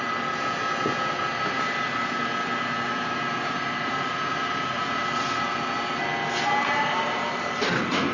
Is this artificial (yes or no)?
no